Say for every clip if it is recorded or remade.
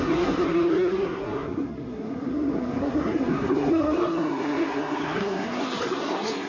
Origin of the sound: remade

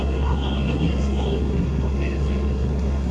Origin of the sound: remade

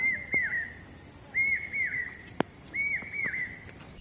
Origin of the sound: recorded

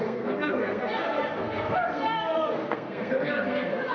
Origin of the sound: remade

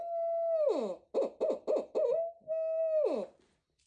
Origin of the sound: recorded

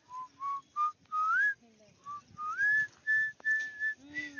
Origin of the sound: recorded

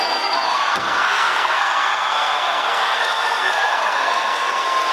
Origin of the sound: remade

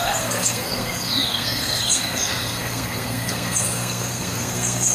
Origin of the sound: remade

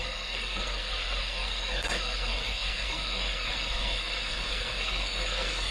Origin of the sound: remade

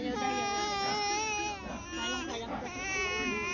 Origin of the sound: recorded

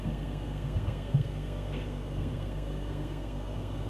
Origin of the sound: remade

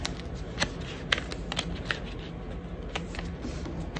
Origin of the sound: recorded